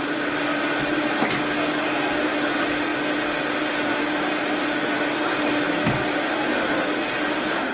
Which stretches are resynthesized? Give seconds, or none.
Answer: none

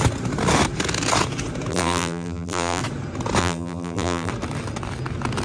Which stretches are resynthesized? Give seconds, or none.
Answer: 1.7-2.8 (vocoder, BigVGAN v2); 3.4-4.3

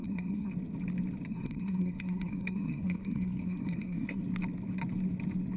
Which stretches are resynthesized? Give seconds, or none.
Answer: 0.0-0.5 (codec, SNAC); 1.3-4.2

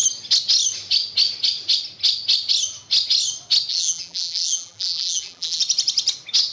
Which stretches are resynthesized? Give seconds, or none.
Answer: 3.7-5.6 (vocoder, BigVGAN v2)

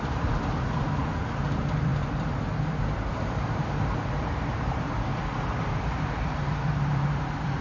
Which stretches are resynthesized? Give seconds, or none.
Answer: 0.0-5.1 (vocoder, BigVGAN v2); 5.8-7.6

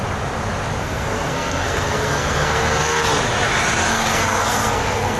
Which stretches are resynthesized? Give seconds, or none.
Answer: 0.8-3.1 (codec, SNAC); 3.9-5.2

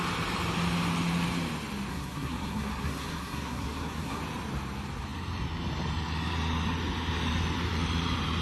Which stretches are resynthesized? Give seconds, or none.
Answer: 1.9-4.2 (codec, SNAC)